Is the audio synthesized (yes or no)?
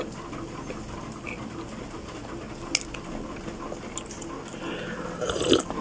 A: no